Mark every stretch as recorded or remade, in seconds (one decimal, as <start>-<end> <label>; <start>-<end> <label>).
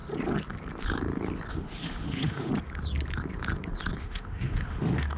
0.0-1.5 recorded; 1.5-2.5 remade; 2.5-4.0 recorded; 4.0-5.2 remade